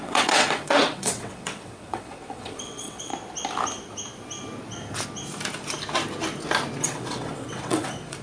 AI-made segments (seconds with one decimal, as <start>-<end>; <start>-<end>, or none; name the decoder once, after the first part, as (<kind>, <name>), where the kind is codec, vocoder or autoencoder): 0.0-3.1 (vocoder, WaveNeXt); 6.8-8.2